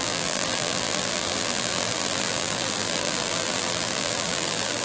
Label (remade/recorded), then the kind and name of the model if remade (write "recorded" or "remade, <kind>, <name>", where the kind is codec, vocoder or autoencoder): remade, vocoder, BigVGAN v2